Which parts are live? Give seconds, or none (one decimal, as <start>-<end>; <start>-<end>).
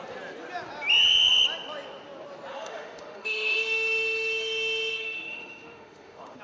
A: 0.0-2.5